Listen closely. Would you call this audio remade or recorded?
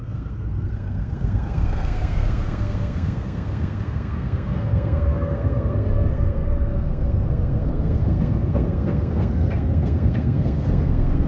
remade